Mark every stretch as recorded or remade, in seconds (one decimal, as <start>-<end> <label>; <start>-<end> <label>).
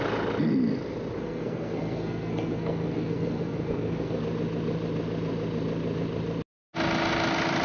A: 0.0-1.2 recorded; 1.2-4.2 remade; 4.2-7.6 recorded